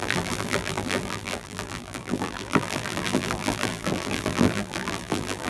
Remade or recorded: remade